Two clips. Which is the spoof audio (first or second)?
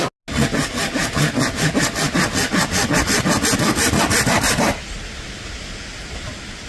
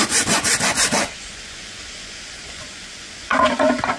second